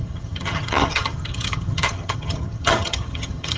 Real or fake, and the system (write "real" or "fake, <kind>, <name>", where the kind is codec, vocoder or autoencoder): fake, vocoder, HiFi-GAN